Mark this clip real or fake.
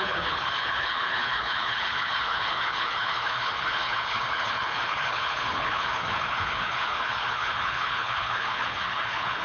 fake